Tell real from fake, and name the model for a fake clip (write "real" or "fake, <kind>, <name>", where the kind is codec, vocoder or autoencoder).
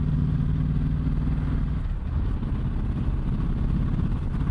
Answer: real